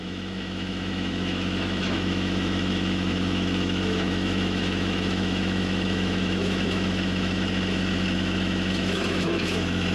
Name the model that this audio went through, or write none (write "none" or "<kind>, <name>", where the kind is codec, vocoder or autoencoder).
autoencoder, DAC-VAE